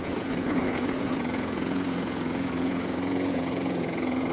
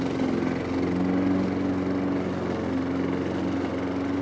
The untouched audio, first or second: second